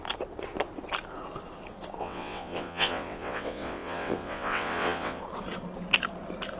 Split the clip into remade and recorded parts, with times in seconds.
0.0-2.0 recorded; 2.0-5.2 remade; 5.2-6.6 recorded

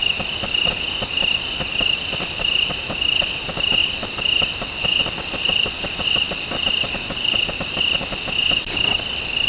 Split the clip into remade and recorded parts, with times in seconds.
0.0-9.5 recorded

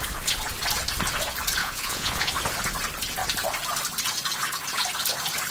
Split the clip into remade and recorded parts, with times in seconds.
0.0-1.6 recorded; 1.6-2.3 remade; 2.3-5.5 recorded

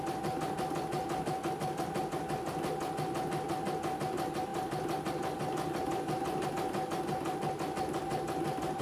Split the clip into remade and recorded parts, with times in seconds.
0.0-8.8 recorded

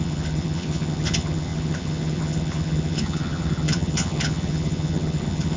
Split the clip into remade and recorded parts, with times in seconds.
0.0-5.6 remade

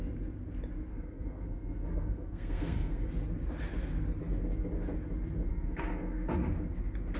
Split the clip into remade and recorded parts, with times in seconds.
0.0-0.9 recorded; 0.9-3.1 remade; 3.1-5.5 recorded; 5.5-6.5 remade; 6.5-7.2 recorded

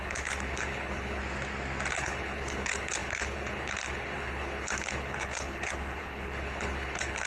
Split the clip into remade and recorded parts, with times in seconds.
0.0-1.2 remade; 1.2-1.9 recorded; 1.9-7.3 remade